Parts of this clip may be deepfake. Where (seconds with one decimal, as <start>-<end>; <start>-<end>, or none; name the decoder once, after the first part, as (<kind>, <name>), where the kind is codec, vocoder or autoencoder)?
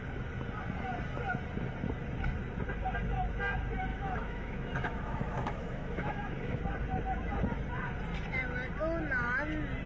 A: 3.9-6.6 (autoencoder, DAC-VAE)